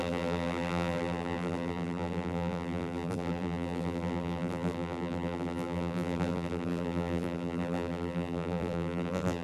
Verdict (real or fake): fake